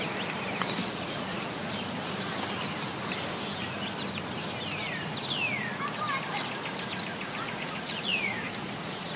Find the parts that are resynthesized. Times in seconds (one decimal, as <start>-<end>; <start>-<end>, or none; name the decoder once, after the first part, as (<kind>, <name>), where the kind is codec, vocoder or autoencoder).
0.8-1.7 (vocoder, Vocos); 7.1-9.2